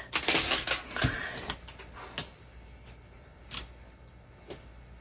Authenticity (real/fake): real